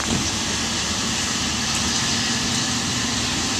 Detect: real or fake real